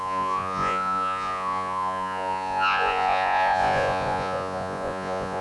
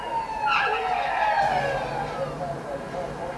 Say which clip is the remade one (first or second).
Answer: first